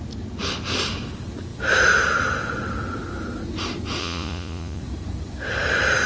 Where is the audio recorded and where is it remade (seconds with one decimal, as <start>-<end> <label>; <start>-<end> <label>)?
0.0-4.0 recorded; 4.0-4.8 remade; 4.8-6.1 recorded